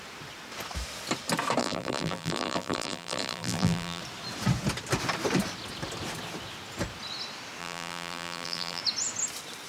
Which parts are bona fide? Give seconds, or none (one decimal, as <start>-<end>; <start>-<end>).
0.0-1.6; 4.0-7.6; 8.8-9.7